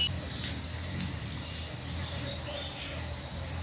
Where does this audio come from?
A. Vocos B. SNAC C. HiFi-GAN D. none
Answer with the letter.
D